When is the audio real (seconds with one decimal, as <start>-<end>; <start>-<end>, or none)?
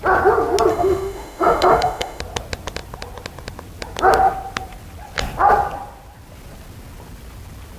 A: 0.0-0.7; 2.2-7.8